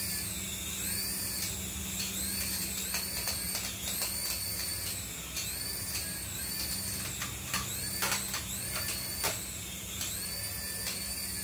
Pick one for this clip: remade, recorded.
recorded